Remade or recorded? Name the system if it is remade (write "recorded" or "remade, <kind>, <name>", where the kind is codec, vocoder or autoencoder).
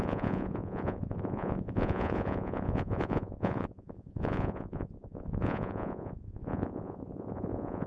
remade, vocoder, Vocos